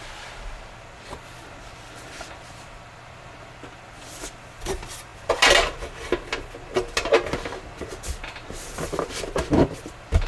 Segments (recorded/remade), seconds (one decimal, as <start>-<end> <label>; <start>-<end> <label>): 0.0-10.3 recorded